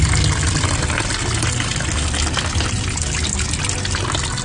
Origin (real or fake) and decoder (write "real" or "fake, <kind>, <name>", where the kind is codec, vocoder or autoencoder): real